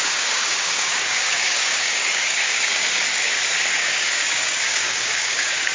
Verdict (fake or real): fake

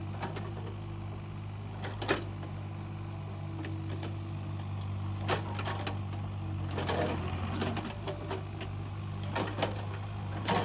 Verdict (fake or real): real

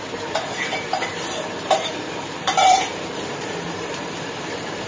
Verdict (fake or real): fake